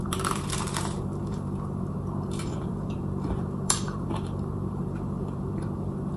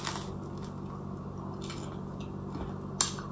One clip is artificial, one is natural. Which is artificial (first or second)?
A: first